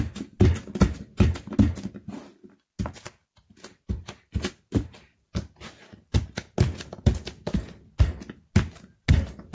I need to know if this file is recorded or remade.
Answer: recorded